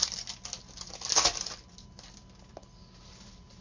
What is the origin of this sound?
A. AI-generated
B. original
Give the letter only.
B